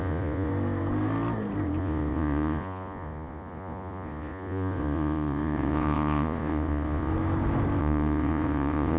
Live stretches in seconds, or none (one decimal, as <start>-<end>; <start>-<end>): 0.5-1.8; 7.1-7.8